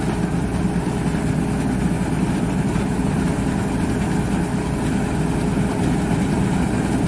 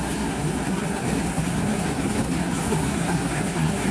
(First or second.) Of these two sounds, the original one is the first